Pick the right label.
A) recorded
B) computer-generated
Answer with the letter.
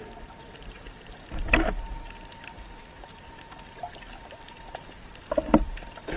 B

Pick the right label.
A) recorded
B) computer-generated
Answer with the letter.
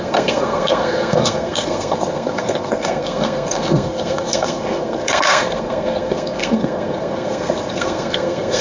B